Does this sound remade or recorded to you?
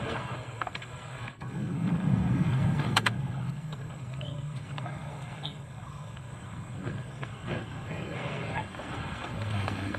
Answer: remade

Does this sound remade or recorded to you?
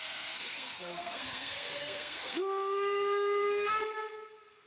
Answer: remade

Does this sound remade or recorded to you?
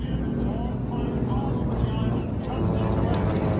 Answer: recorded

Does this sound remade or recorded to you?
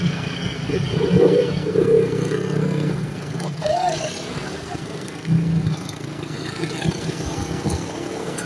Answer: remade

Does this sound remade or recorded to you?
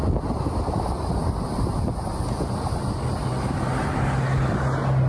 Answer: recorded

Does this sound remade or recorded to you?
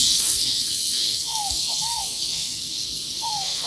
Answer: remade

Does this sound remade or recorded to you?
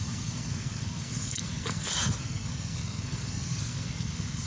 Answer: remade